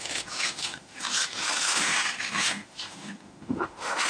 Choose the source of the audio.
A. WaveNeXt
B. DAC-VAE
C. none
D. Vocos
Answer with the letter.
B